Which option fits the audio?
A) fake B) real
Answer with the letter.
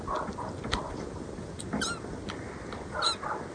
B